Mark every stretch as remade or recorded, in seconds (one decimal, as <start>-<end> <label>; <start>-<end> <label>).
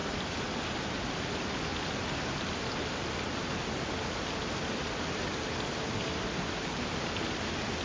0.0-7.8 recorded